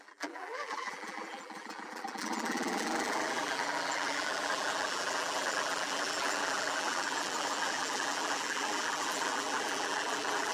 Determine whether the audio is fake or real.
fake